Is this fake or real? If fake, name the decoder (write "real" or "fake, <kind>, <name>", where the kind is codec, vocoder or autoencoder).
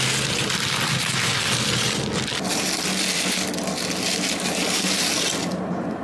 real